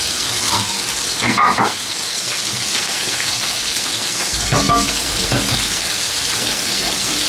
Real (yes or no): no